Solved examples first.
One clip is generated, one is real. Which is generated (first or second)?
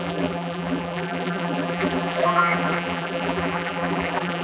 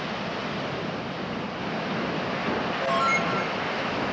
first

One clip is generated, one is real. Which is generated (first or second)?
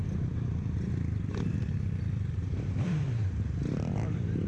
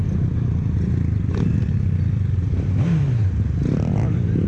first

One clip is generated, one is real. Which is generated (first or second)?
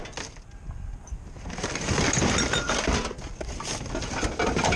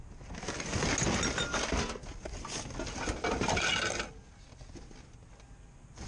first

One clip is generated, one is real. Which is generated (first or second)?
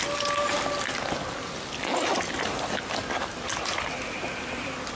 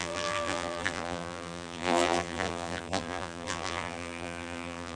second